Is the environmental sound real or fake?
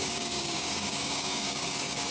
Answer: fake